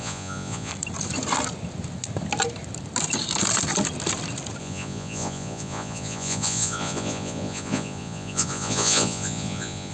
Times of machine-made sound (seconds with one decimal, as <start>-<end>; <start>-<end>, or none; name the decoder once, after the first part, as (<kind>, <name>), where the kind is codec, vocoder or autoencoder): 0.0-0.7 (vocoder, Vocos); 4.6-9.9